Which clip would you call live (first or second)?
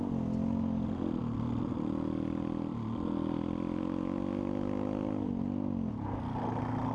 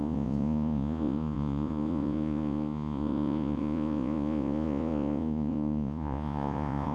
first